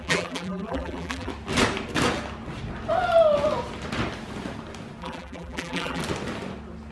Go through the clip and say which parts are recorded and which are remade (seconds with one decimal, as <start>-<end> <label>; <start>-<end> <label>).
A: 0.0-1.3 remade; 1.3-5.0 recorded; 5.0-6.0 remade; 6.0-6.9 recorded